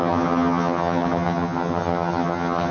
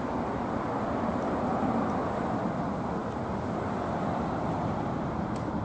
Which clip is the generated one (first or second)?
first